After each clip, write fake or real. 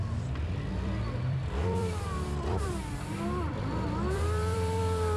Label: fake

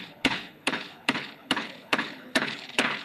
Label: fake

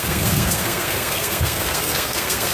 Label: fake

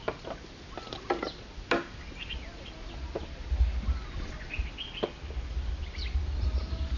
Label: real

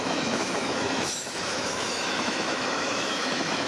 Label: fake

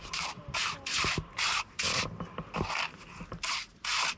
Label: real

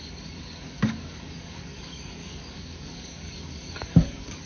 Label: fake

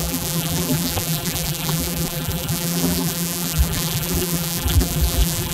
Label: fake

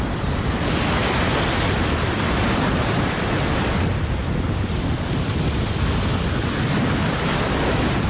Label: real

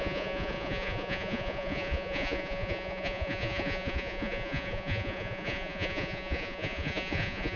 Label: fake